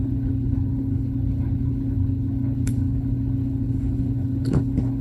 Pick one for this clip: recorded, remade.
remade